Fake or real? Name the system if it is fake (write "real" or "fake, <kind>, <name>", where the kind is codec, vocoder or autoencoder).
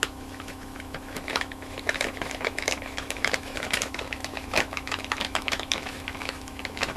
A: fake, autoencoder, DAC-VAE